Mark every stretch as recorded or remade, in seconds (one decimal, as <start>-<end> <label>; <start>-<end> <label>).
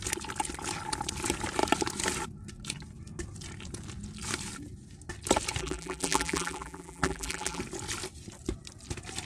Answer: 0.0-5.6 recorded; 5.6-7.6 remade; 7.6-9.3 recorded